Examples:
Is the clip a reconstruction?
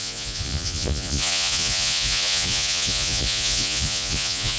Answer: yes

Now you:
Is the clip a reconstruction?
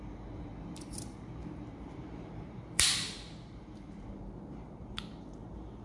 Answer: yes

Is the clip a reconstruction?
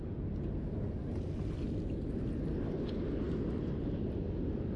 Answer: no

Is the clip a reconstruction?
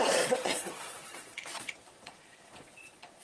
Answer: yes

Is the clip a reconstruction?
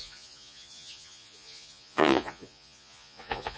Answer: yes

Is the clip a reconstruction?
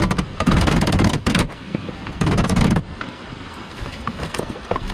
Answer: yes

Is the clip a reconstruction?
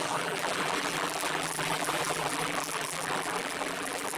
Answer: yes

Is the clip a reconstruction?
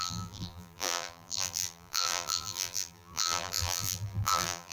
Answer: yes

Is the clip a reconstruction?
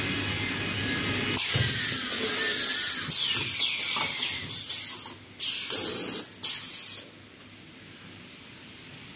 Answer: no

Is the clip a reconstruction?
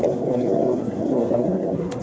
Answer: yes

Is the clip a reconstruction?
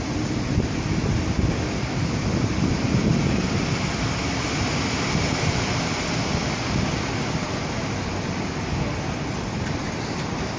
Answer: no